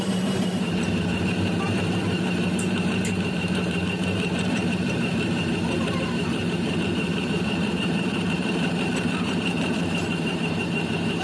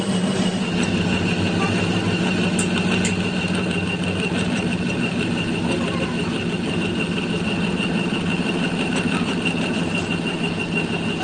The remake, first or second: first